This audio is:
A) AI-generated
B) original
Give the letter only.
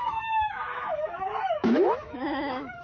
A